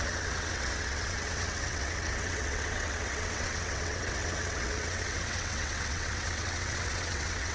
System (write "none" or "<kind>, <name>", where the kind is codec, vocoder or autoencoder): vocoder, WaveNeXt